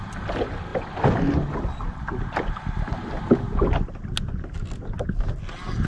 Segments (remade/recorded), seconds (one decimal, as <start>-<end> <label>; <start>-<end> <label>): 0.0-5.9 recorded

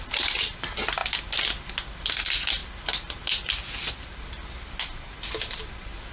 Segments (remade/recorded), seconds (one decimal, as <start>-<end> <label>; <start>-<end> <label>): 0.0-6.1 recorded

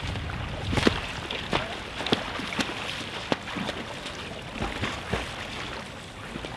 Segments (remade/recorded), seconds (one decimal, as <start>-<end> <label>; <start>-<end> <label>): 0.0-6.6 recorded

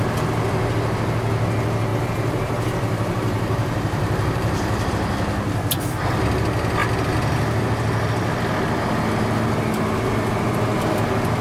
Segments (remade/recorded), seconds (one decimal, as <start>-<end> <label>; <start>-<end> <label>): 0.0-1.9 recorded; 1.9-4.9 remade; 4.9-11.4 recorded

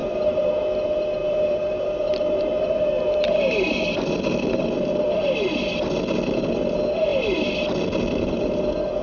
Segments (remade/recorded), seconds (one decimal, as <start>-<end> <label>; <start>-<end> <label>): 0.0-0.5 remade; 0.5-1.2 recorded; 1.2-3.1 remade; 3.1-9.0 recorded

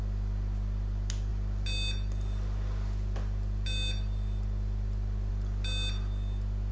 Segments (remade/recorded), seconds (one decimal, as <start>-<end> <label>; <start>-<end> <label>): 0.0-6.7 recorded

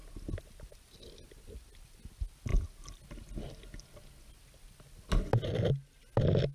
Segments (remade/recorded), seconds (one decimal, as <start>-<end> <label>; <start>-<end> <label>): 0.0-6.5 recorded

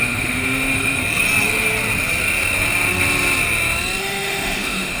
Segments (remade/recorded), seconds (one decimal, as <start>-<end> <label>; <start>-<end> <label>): 0.0-1.0 remade; 1.0-4.0 recorded; 4.0-5.0 remade